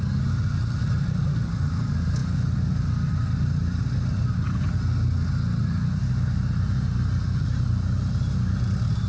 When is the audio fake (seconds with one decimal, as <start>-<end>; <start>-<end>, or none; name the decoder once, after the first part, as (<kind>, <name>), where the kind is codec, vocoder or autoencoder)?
none